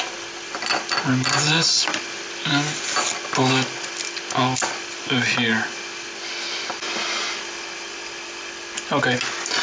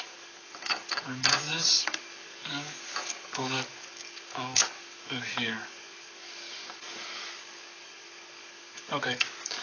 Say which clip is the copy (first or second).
second